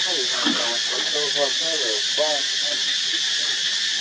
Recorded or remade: recorded